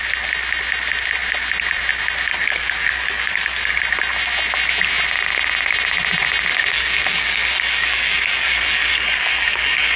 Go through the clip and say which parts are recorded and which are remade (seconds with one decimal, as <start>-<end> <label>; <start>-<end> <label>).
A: 0.0-2.3 recorded; 2.3-3.8 remade; 3.8-6.5 recorded; 6.5-10.0 remade